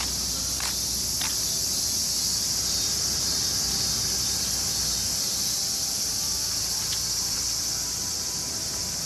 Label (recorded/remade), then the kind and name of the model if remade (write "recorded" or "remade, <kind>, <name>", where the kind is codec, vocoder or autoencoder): recorded